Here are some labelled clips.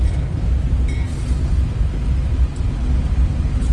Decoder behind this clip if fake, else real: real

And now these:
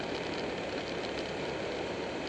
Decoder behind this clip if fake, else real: real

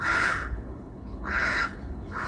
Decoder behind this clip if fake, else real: fake, codec, HILCodec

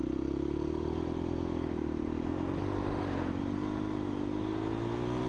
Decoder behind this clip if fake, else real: real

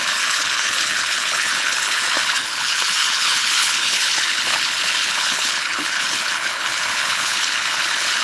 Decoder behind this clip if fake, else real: fake, codec, HILCodec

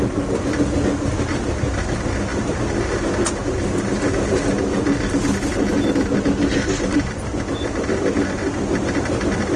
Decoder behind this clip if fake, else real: real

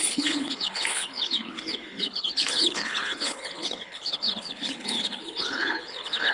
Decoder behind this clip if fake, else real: fake, codec, HILCodec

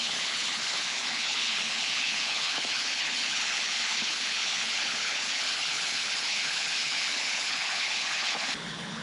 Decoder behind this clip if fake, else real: fake, codec, HILCodec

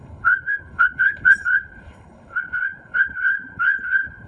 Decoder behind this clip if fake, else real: fake, codec, HILCodec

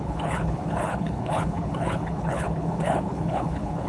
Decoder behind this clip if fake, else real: fake, codec, HILCodec